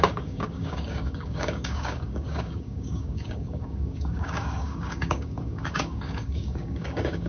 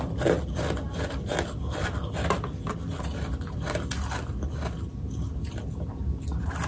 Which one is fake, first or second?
first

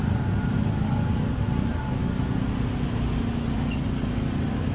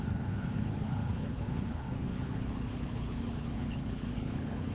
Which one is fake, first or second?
second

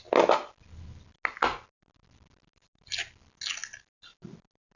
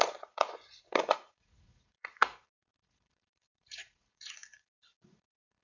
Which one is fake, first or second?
second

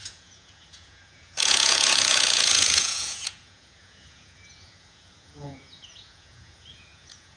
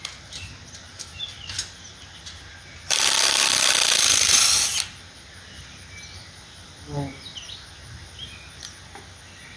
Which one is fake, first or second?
first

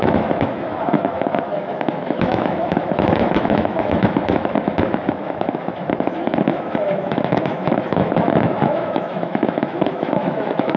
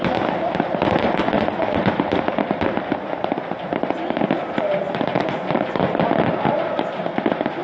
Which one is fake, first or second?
first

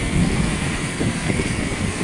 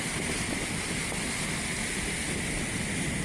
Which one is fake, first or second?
first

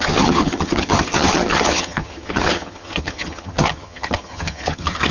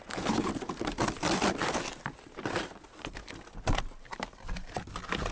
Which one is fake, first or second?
first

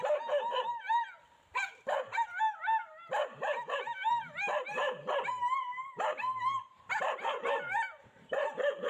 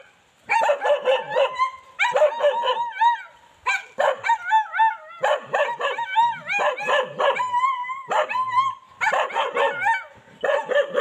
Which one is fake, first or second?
first